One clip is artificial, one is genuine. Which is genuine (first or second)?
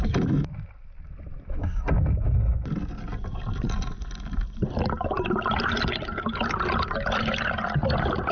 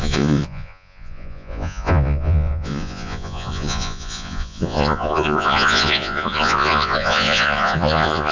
first